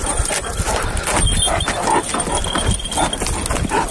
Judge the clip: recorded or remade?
recorded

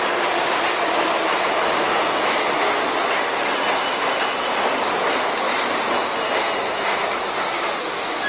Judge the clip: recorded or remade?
recorded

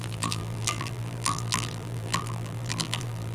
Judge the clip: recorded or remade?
remade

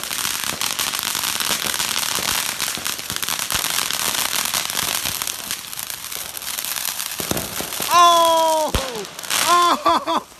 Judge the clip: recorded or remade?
recorded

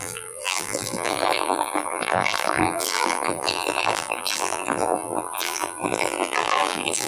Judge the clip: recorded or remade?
remade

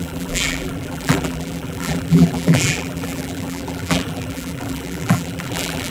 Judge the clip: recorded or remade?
remade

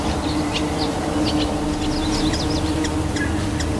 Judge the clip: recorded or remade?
recorded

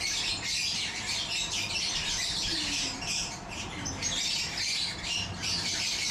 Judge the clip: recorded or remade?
remade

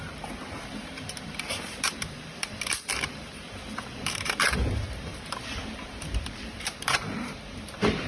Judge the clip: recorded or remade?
remade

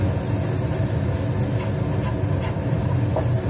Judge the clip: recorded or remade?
recorded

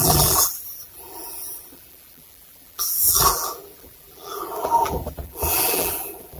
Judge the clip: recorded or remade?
remade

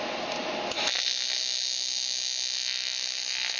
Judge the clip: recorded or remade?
recorded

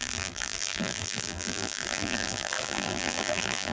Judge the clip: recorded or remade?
remade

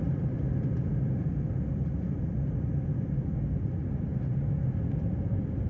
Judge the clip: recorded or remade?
remade